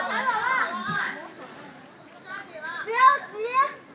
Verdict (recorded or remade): recorded